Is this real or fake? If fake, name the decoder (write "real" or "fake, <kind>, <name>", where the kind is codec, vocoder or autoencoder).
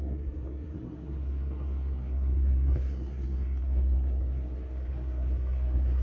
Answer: fake, codec, SNAC